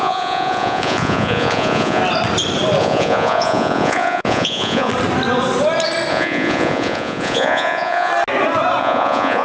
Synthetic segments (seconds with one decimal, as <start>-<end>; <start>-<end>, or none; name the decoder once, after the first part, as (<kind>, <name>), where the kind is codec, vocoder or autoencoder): 0.0-2.0 (vocoder, Vocos); 2.8-4.9; 6.1-8.1; 8.8-9.4